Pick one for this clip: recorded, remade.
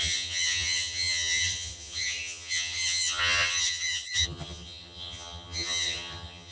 remade